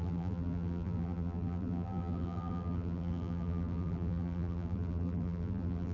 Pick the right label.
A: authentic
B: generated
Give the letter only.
B